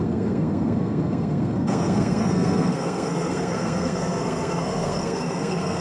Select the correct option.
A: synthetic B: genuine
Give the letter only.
A